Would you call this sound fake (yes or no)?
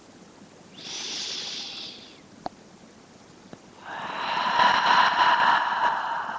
no